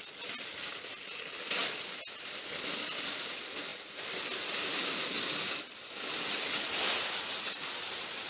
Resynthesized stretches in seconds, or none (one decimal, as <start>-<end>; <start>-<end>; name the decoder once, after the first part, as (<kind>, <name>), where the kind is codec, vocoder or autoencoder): none